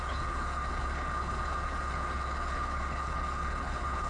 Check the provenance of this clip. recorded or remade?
remade